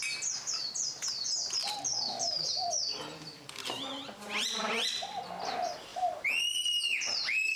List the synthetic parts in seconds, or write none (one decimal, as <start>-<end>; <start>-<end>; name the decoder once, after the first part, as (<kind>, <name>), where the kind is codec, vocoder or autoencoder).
1.6-5.2 (vocoder, BigVGAN v2)